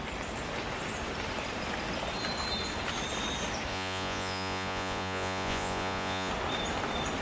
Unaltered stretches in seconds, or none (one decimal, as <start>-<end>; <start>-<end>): 0.0-3.7; 6.3-7.2